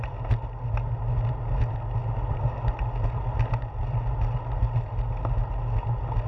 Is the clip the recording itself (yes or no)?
yes